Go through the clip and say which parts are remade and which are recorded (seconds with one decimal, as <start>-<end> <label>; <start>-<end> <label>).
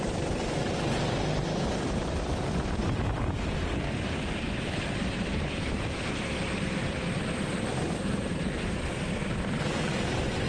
0.0-2.8 recorded; 2.8-7.2 remade; 7.2-7.7 recorded; 7.7-8.9 remade; 8.9-10.5 recorded